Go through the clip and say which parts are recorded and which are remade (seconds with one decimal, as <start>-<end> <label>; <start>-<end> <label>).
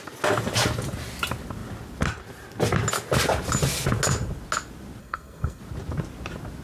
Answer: 0.0-5.0 recorded; 5.0-5.6 remade; 5.6-6.6 recorded